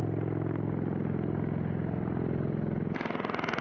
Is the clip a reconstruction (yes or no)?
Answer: no